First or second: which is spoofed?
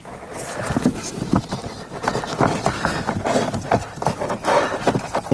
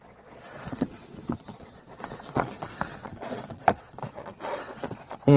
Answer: second